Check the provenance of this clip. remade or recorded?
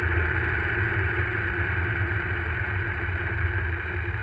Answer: recorded